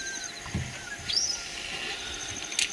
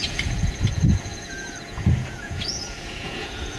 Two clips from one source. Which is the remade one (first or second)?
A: second